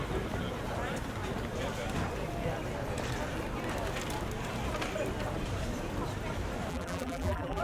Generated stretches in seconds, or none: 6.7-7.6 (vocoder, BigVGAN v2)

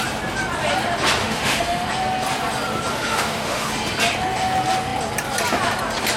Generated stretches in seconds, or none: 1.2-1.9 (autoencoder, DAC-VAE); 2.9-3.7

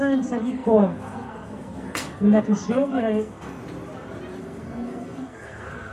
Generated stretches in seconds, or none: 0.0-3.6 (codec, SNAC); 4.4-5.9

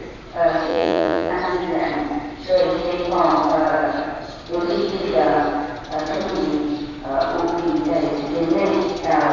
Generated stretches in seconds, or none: 0.7-1.3 (vocoder, Vocos)